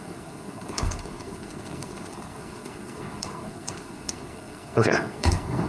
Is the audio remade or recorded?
remade